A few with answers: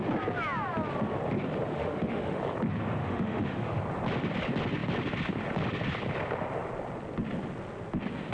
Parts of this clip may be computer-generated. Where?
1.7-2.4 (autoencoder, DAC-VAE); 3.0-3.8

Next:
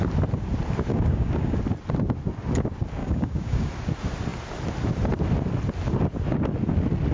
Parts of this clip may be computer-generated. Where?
0.9-1.6 (codec, DAC); 3.0-3.7

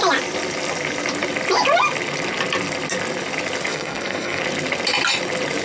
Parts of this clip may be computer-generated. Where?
3.7-4.4 (codec, SNAC)

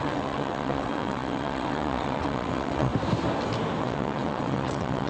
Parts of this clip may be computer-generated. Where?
0.0-2.9 (vocoder, WaveNeXt); 3.8-5.1

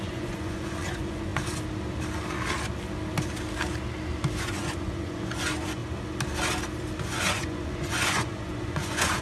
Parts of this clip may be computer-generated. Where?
0.0-1.3 (vocoder, Vocos); 4.4-5.8; 7.0-9.2

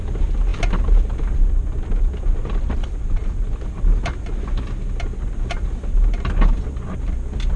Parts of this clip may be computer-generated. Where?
0.0-3.2 (vocoder, BigVGAN v2); 5.3-7.6